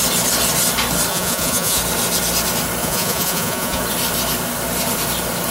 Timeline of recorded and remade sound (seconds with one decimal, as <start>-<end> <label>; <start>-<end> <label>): 0.0-1.1 recorded; 1.1-1.8 remade; 1.8-2.8 recorded; 2.8-3.8 remade; 3.8-5.5 recorded